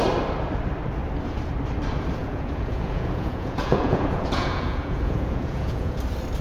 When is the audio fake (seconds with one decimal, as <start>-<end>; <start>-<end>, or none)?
2.2-6.0